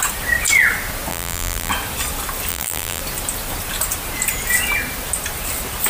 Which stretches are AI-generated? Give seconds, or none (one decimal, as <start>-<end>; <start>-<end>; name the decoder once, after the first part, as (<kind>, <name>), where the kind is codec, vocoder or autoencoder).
1.1-1.7 (vocoder, BigVGAN v2); 2.5-3.0